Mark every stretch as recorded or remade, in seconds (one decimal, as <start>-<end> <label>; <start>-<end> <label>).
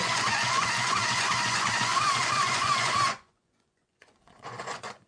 0.0-5.1 remade